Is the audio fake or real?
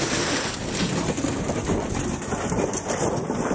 fake